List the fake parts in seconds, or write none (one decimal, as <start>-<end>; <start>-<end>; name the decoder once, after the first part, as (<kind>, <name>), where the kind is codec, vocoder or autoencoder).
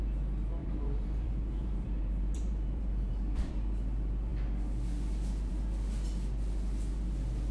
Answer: 0.6-3.5 (vocoder, BigVGAN v2)